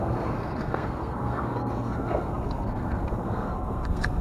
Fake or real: fake